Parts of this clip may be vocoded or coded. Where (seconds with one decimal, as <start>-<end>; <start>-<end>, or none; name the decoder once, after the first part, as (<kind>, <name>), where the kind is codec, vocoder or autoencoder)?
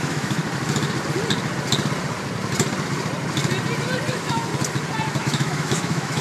0.0-0.4 (autoencoder, DAC-VAE); 4.1-4.5; 5.2-6.2